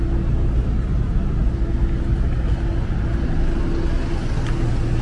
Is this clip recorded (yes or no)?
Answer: yes